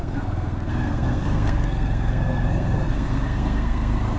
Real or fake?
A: fake